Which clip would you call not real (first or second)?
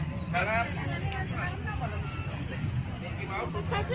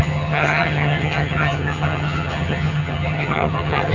second